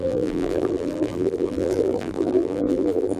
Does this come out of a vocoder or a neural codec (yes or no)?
yes